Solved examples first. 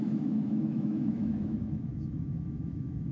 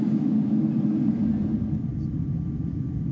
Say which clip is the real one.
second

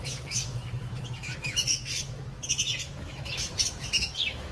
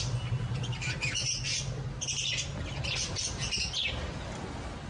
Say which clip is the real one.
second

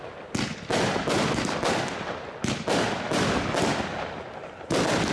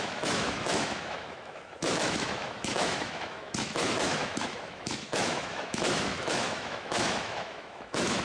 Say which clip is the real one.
first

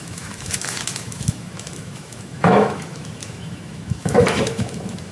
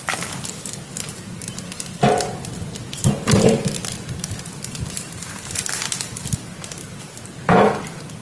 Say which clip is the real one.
second